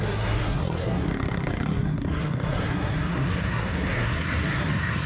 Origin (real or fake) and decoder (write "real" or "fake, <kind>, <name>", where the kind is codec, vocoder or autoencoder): fake, codec, SNAC